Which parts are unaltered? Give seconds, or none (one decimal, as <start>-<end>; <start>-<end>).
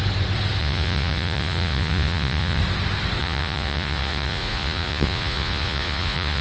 0.0-0.6; 2.6-3.2